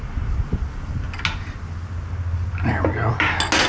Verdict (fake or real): real